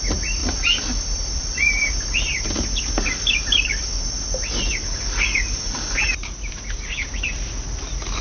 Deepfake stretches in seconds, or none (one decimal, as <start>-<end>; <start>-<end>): 0.4-4.0; 4.7-7.5